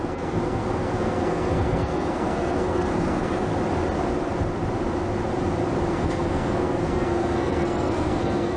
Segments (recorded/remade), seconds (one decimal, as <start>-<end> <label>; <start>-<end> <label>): 0.0-3.5 remade; 3.5-5.9 recorded; 5.9-8.6 remade